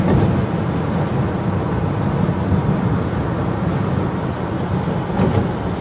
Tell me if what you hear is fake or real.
real